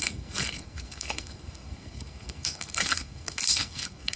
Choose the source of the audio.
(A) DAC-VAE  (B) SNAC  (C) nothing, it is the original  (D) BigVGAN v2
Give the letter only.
B